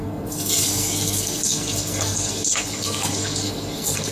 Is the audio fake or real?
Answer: fake